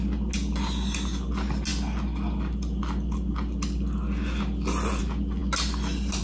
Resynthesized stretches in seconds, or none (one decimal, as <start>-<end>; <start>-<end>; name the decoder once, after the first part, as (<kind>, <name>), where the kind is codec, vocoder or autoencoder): none